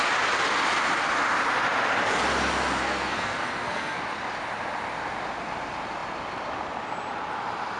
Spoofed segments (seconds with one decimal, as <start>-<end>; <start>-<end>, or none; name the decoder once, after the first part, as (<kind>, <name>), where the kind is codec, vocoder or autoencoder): 2.8-4.0 (codec, SNAC)